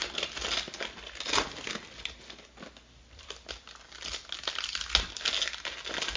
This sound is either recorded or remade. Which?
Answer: recorded